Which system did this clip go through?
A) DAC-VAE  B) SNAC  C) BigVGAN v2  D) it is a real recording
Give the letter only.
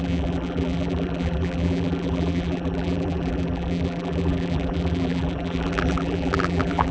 C